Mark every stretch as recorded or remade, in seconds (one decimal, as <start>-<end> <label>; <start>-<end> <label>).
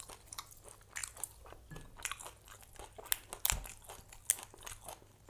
0.0-5.3 recorded